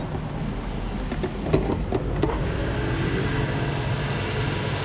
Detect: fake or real real